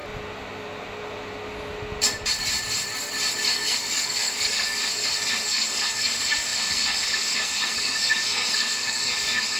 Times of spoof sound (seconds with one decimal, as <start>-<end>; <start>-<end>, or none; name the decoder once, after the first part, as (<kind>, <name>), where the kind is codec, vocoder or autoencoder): 3.5-9.6 (codec, SNAC)